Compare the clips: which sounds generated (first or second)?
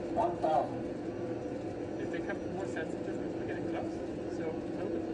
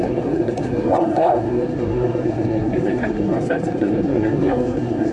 second